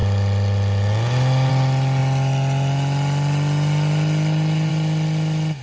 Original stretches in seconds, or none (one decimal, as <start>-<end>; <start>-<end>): 0.0-5.6